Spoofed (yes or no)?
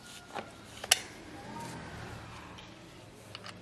no